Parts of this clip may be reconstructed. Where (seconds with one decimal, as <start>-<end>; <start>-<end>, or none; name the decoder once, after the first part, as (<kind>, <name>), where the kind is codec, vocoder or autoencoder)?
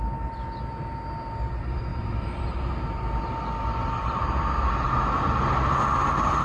none